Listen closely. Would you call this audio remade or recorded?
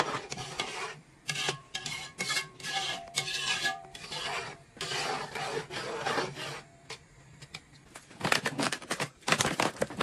remade